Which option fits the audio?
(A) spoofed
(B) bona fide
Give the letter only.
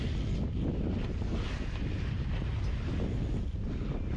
B